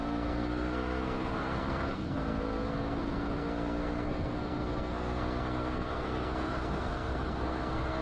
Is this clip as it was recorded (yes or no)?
no